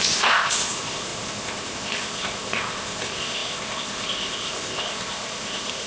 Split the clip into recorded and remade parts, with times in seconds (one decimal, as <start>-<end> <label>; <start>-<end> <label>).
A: 0.0-5.9 remade